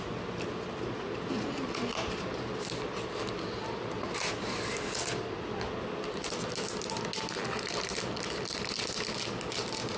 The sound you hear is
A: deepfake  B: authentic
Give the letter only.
B